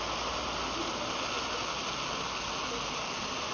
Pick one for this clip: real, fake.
real